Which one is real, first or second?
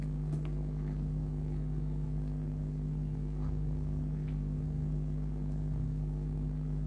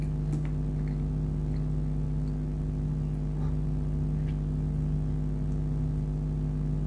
second